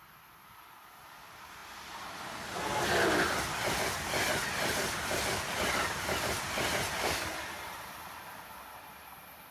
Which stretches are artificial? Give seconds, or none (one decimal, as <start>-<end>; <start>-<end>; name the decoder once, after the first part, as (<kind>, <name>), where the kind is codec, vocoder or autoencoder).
none